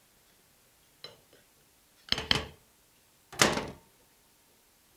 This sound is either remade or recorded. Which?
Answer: recorded